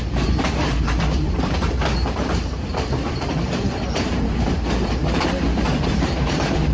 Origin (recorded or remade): remade